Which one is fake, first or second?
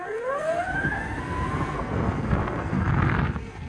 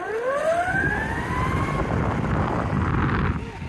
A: first